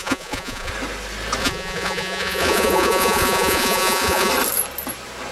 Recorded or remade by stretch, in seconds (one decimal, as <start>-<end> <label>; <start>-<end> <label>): 0.0-0.7 remade; 0.7-1.4 recorded; 1.4-4.3 remade; 4.3-5.3 recorded